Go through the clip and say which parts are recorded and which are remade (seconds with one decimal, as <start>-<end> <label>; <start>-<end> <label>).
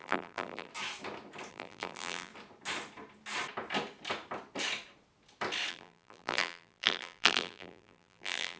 0.0-0.7 remade; 0.7-1.5 recorded; 1.5-2.3 remade; 2.3-5.7 recorded; 5.7-8.6 remade